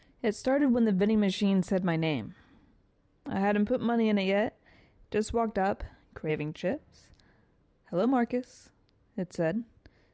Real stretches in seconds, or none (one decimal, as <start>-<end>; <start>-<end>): 3.1-6.3